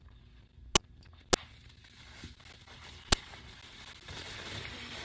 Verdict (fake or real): real